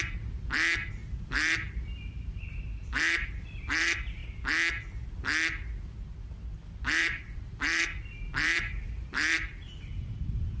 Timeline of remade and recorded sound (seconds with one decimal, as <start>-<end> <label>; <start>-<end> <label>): 0.0-4.2 remade; 4.2-6.6 recorded; 6.6-10.6 remade